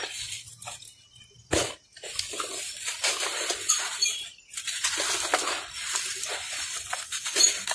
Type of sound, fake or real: fake